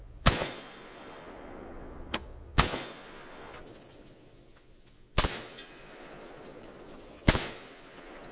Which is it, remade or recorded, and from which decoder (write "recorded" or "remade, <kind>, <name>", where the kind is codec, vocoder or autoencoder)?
remade, vocoder, Vocos